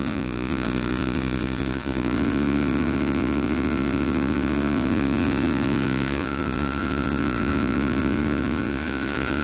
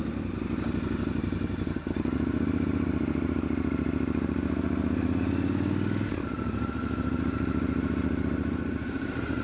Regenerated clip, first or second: first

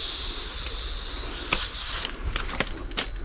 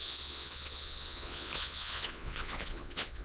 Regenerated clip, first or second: second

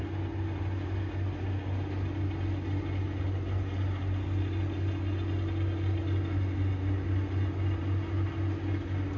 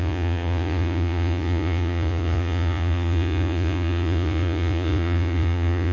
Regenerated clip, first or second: second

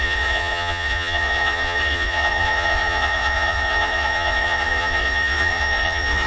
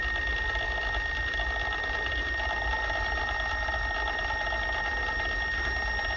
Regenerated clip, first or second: first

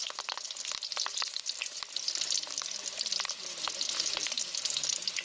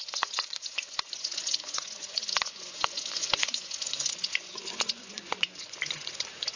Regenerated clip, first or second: second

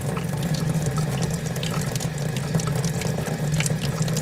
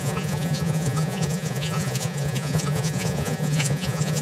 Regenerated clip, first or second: second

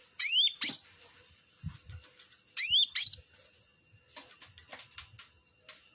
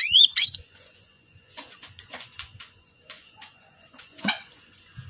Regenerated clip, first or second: second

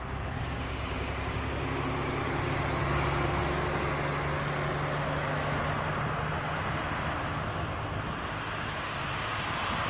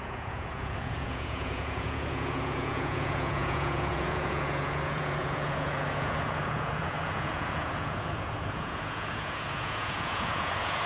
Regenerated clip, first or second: second